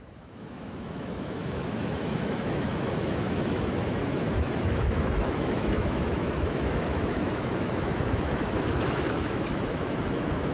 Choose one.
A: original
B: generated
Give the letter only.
B